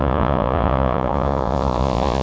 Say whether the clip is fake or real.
fake